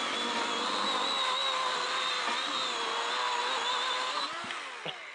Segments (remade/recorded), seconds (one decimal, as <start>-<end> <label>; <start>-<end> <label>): 0.0-5.1 recorded